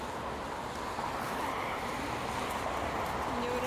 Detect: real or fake real